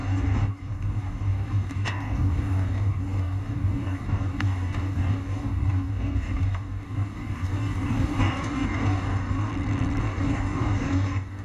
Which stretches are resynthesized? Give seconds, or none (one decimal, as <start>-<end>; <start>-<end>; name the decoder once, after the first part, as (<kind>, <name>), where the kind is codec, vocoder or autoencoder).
0.0-9.5 (codec, DAC); 10.0-11.4